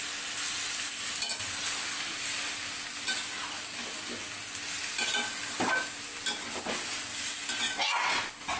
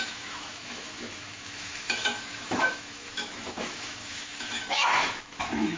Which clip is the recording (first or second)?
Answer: first